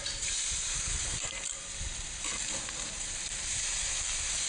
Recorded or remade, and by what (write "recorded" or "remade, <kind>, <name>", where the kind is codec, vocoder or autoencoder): remade, vocoder, BigVGAN v2